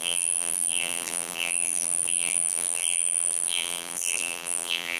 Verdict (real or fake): fake